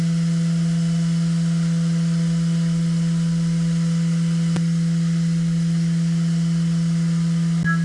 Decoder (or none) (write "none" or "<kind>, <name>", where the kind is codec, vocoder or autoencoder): none